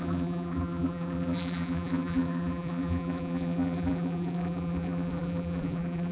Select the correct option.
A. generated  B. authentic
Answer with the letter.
A